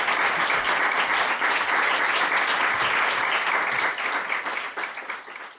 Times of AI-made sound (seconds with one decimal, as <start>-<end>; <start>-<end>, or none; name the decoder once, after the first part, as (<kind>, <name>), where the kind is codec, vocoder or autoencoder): none